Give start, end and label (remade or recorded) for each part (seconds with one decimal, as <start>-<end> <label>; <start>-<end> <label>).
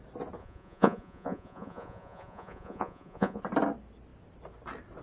0.0-0.4 recorded; 0.4-3.4 remade; 3.4-5.0 recorded